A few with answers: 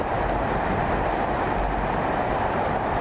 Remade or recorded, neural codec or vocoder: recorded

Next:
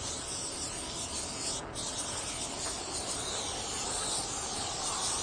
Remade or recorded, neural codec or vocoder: recorded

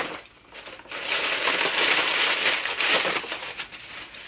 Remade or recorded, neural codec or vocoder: recorded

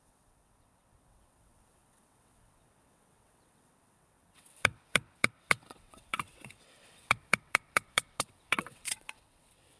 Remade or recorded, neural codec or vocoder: remade, vocoder, WaveNeXt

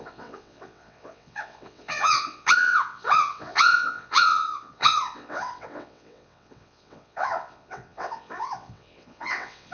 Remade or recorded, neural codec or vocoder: remade, vocoder, WaveNeXt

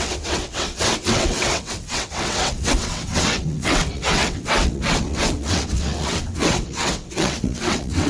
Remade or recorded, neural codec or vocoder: remade, vocoder, WaveNeXt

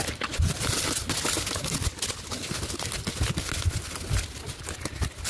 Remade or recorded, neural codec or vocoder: recorded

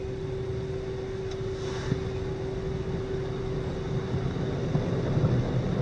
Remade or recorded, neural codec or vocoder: recorded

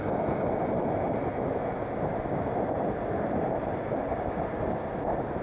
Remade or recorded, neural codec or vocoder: recorded